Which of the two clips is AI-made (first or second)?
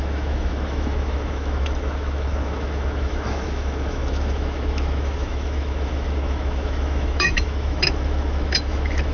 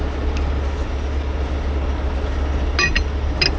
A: first